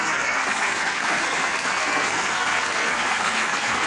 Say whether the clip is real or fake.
fake